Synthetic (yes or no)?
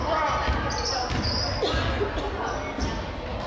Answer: no